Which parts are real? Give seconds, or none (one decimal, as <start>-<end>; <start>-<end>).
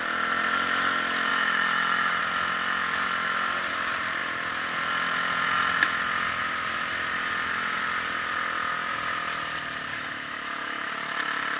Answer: 0.0-1.3; 2.2-9.9; 10.9-11.6